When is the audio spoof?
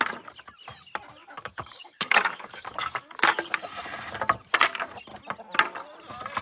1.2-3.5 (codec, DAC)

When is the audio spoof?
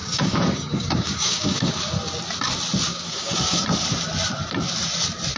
0.0-1.7 (codec, DAC); 2.9-3.6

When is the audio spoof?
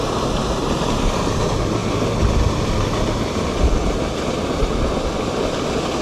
none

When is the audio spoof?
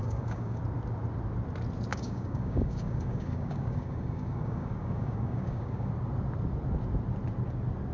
0.0-0.6 (codec, DAC); 1.9-5.9